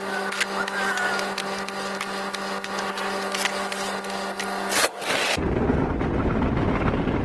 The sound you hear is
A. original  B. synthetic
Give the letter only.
A